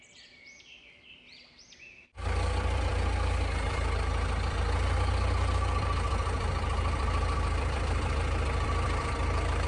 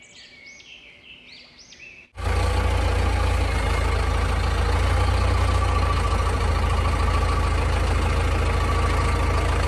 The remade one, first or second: first